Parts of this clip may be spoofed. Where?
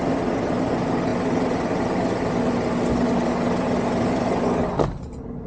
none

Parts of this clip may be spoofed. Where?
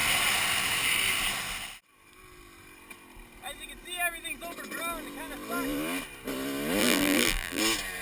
6.8-7.6 (vocoder, BigVGAN v2)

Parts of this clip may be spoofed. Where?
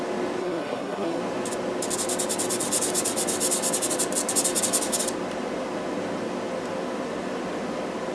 0.4-1.2 (codec, SNAC)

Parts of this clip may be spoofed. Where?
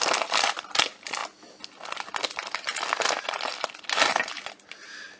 none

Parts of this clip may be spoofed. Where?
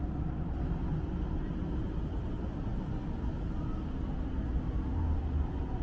none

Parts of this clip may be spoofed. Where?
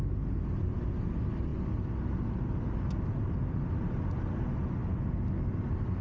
none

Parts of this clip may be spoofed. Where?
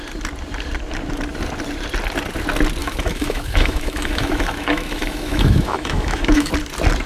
2.8-6.5 (autoencoder, DAC-VAE)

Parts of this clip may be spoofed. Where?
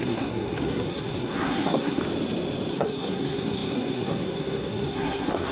0.0-2.0 (codec, SNAC); 2.7-5.5